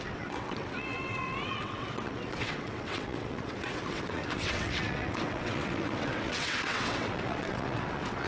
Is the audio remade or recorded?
remade